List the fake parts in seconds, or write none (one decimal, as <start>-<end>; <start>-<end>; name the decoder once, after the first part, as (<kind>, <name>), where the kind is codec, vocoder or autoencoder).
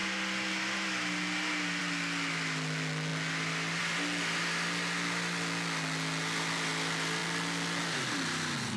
none